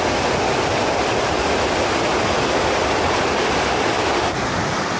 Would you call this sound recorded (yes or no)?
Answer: yes